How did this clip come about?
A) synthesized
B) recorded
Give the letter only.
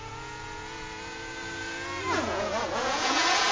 A